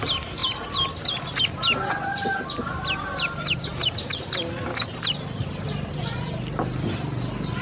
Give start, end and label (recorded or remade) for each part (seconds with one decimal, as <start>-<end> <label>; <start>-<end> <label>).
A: 0.0-7.6 recorded